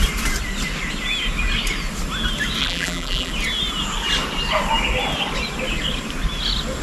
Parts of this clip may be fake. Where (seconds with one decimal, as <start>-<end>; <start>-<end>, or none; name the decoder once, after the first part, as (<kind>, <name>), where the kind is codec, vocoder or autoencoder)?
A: 2.6-3.3 (vocoder, BigVGAN v2)